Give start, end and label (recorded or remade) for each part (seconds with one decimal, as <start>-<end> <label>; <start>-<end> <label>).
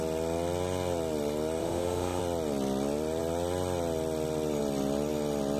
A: 0.0-1.6 recorded; 1.6-2.2 remade; 2.2-5.6 recorded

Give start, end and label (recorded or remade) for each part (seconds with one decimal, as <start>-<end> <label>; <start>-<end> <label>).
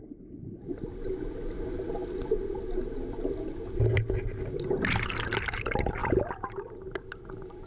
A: 0.0-7.7 recorded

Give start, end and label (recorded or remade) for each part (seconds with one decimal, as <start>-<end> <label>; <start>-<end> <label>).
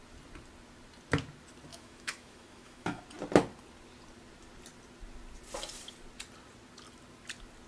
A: 0.0-1.7 recorded; 1.7-3.0 remade; 3.0-7.7 recorded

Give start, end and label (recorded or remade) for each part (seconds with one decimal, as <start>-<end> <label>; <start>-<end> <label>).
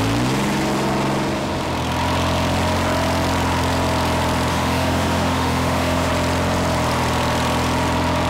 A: 0.0-4.5 recorded; 4.5-6.1 remade; 6.1-8.3 recorded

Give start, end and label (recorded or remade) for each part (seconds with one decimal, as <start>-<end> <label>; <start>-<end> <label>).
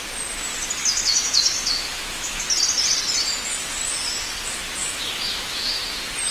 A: 0.0-0.8 recorded; 0.8-2.4 remade; 2.4-4.8 recorded; 4.8-5.8 remade; 5.8-6.3 recorded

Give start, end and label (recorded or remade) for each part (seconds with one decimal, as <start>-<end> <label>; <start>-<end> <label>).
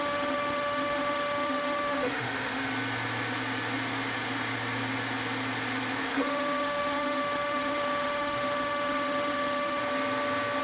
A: 0.0-2.7 remade; 2.7-6.1 recorded; 6.1-9.8 remade; 9.8-10.6 recorded